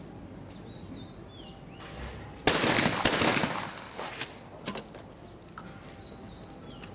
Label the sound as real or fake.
real